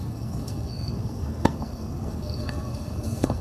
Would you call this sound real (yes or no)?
no